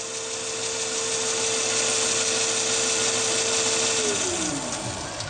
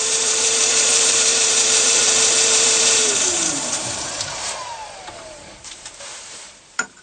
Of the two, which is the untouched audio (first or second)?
first